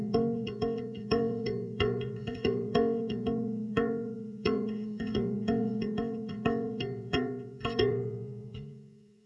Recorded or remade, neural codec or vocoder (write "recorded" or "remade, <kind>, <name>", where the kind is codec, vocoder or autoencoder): remade, vocoder, Vocos